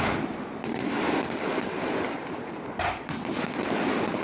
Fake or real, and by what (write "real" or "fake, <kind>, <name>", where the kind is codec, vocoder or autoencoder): real